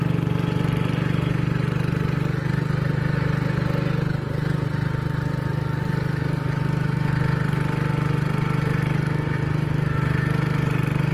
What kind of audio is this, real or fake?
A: real